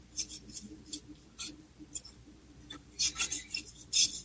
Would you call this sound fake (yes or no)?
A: yes